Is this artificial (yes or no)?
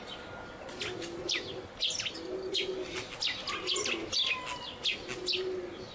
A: no